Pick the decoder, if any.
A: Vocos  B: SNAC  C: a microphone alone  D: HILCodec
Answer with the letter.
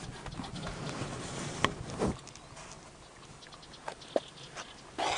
C